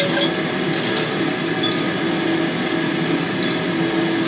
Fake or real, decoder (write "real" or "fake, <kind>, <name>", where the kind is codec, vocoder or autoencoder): real